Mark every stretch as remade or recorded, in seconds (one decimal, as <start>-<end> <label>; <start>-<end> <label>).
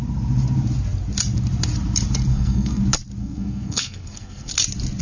0.0-2.3 recorded; 2.3-2.8 remade; 2.8-3.2 recorded; 3.2-4.5 remade; 4.5-5.0 recorded